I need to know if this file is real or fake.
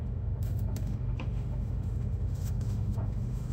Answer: fake